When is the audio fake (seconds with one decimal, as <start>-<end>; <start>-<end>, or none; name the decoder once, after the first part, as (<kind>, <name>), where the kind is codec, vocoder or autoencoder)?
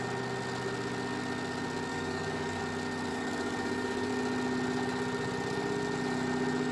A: 1.9-2.6 (codec, DAC); 3.1-4.1